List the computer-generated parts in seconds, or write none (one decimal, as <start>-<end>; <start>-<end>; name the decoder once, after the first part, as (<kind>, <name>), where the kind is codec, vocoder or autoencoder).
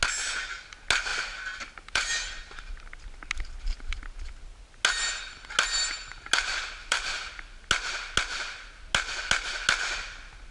1.1-2.1 (vocoder, BigVGAN v2); 6.8-7.3